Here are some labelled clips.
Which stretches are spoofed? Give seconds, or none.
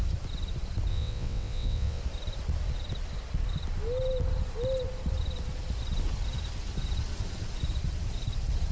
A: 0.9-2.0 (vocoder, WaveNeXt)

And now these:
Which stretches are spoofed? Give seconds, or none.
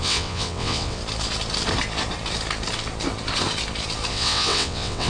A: 0.0-1.0 (vocoder, WaveNeXt); 4.1-5.1